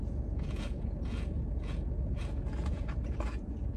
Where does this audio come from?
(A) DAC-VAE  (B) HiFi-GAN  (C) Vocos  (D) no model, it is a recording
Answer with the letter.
C